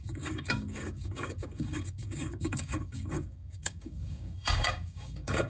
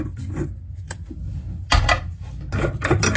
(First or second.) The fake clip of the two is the first